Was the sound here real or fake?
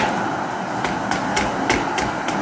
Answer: real